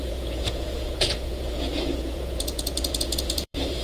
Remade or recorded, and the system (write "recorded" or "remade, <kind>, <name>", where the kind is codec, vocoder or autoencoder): remade, vocoder, Vocos